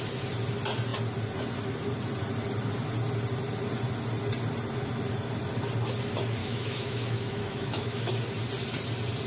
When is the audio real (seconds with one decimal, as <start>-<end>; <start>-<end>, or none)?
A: 0.0-6.4; 8.1-9.3